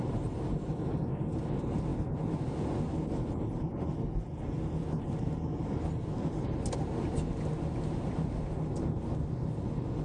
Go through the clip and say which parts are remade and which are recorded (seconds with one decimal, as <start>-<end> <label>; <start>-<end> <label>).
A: 0.0-10.0 recorded